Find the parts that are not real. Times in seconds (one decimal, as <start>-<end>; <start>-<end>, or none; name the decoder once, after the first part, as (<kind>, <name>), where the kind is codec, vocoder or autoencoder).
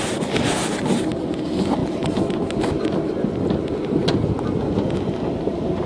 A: none